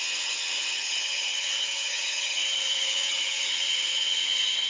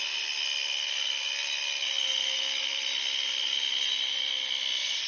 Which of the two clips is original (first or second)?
second